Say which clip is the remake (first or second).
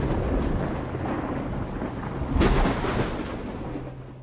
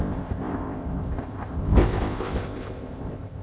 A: second